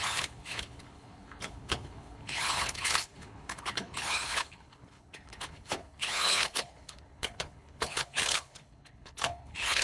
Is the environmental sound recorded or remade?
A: remade